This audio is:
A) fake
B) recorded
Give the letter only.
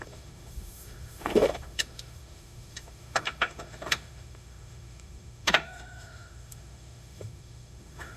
A